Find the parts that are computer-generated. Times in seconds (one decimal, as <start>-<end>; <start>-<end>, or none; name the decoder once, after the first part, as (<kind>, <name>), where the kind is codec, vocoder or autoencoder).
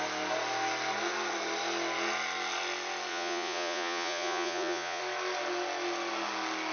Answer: 3.1-5.0 (vocoder, Vocos)